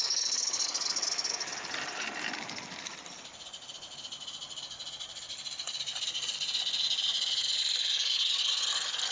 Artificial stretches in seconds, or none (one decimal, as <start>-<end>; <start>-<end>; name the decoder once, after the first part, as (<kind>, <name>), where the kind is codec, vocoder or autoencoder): 2.6-7.8 (vocoder, BigVGAN v2)